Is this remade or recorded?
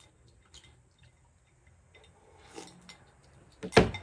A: recorded